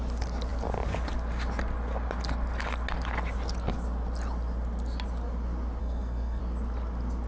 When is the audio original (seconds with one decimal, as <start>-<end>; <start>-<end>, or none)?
0.0-5.8; 6.4-7.3